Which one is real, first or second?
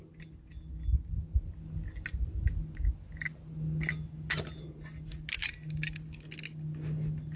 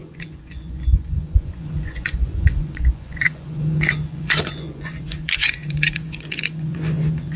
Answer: first